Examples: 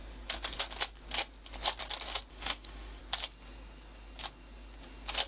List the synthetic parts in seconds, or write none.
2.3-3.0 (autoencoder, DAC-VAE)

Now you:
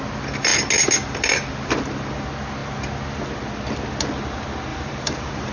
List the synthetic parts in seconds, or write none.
4.7-5.5 (vocoder, BigVGAN v2)

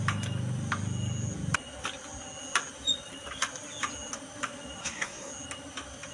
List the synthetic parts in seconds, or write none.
4.8-5.3 (codec, SNAC)

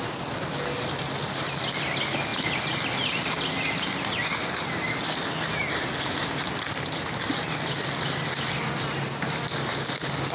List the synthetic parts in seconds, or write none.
none

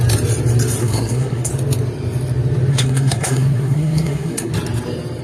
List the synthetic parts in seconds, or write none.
0.8-1.5 (codec, SNAC); 2.7-4.5

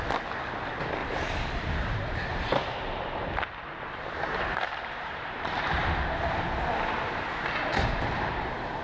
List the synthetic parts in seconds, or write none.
1.0-5.6 (vocoder, BigVGAN v2); 7.8-8.8